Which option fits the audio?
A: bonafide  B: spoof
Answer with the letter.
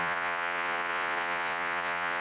B